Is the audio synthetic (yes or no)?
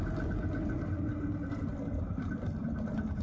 no